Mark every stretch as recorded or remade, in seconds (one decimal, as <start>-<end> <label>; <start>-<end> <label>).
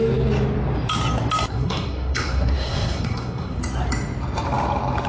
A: 0.0-1.5 recorded; 1.5-3.6 remade; 3.6-5.1 recorded